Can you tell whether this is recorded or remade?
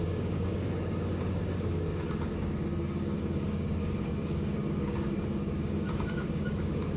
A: remade